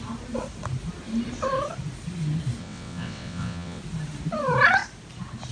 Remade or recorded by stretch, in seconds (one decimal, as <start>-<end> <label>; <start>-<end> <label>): 0.0-2.6 recorded; 2.6-3.8 remade; 3.8-5.5 recorded